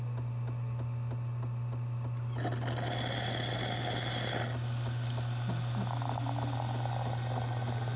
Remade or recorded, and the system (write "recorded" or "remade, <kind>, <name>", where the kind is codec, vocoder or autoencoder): recorded